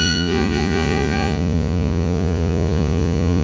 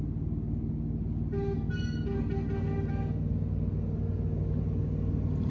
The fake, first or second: first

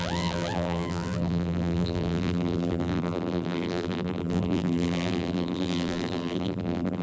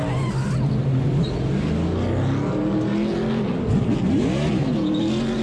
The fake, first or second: first